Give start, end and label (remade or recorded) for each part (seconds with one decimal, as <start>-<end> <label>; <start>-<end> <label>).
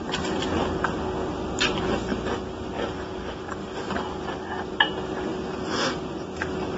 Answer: 0.0-5.3 recorded; 5.3-6.8 remade